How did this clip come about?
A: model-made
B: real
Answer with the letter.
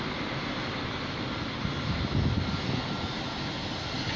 B